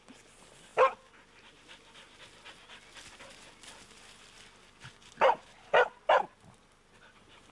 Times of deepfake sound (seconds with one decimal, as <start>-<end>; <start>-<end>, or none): none